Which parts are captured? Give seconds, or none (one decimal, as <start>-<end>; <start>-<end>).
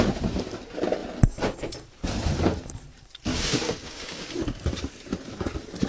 0.0-3.3; 4.2-5.9